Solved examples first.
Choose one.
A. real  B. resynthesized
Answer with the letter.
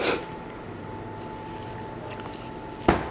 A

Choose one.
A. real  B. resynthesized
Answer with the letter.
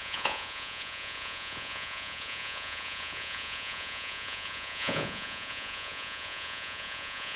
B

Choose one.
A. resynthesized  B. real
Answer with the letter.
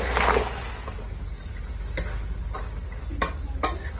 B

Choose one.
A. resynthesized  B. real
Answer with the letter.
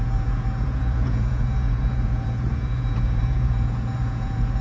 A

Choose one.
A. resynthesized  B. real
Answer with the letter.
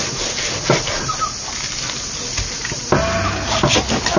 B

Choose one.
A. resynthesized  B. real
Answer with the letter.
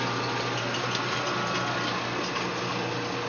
B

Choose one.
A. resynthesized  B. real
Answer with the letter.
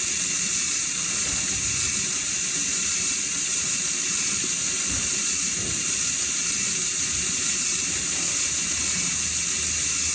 B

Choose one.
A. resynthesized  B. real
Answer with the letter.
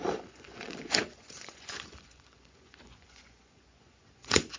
A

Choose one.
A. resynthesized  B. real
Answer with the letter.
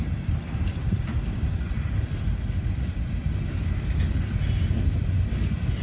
B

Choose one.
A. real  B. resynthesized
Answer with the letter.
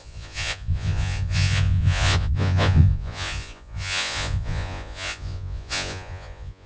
B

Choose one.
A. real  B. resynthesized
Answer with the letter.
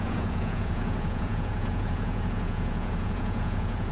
B